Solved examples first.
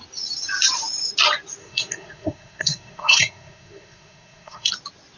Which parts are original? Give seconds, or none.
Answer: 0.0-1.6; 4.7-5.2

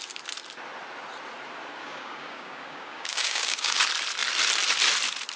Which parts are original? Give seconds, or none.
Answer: 0.0-1.8; 3.8-5.4

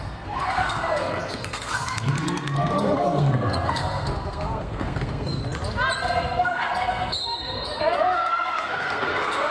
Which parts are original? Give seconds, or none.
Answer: 5.4-6.0; 7.2-7.8

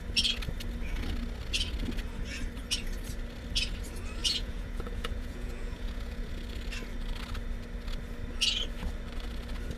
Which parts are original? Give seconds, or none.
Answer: 0.0-4.2; 6.3-9.8

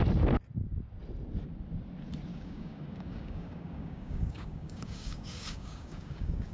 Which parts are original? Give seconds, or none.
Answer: 0.0-2.3

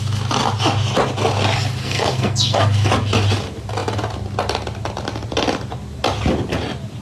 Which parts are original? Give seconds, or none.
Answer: 0.0-1.8; 2.9-7.0

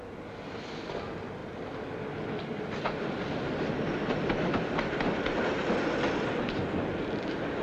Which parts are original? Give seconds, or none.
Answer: 0.0-7.6

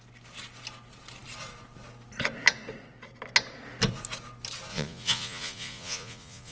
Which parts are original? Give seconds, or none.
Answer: 0.0-4.7